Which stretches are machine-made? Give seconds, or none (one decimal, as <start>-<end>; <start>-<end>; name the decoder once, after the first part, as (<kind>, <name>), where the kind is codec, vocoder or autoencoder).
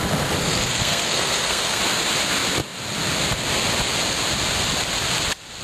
0.4-1.8 (codec, SNAC)